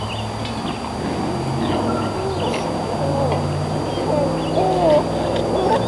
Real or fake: real